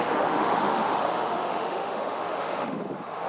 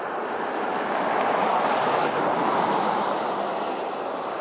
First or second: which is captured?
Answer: second